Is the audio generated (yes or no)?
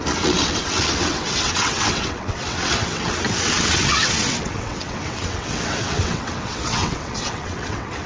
yes